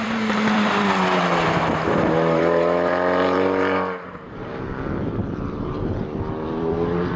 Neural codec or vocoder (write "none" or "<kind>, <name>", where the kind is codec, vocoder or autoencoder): vocoder, BigVGAN v2